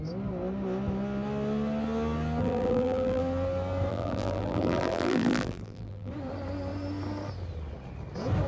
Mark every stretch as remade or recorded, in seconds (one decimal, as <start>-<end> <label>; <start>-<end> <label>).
0.0-2.4 recorded; 2.4-3.2 remade; 3.2-3.9 recorded; 3.9-6.1 remade; 6.1-8.5 recorded